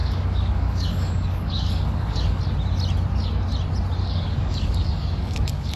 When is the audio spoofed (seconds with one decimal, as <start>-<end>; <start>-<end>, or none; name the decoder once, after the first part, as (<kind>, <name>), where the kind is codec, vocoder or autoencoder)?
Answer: 0.0-2.4 (codec, DAC); 4.0-5.8